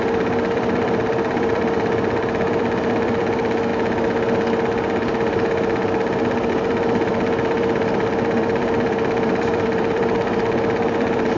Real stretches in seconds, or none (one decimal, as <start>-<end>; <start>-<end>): 3.7-6.5